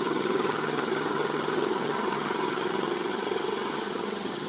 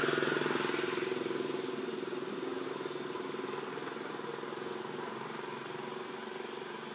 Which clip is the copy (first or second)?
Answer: first